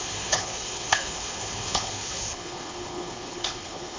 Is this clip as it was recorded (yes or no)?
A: no